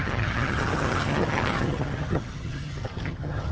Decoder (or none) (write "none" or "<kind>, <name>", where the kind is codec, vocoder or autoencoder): vocoder, HiFi-GAN